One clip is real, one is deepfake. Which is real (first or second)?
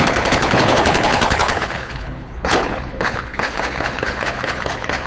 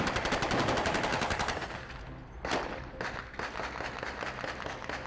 second